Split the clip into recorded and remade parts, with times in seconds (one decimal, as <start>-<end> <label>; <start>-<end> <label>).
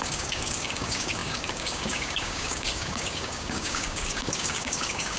0.0-5.2 remade